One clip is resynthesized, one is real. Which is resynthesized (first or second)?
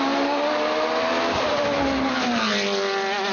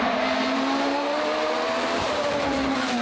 second